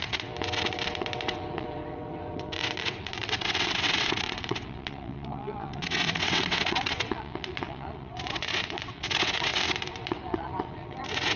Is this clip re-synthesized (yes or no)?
yes